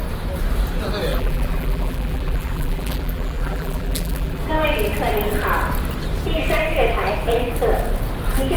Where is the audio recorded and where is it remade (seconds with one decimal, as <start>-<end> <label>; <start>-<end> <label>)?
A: 0.0-1.1 recorded; 1.1-4.4 remade; 4.4-8.6 recorded